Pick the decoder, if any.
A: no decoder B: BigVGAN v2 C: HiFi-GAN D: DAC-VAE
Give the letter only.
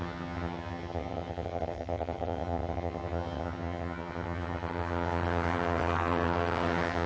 C